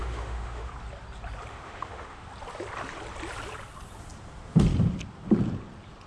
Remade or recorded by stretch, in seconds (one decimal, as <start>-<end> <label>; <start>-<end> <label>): 0.0-0.7 remade; 0.7-1.5 recorded; 1.5-2.3 remade; 2.3-6.1 recorded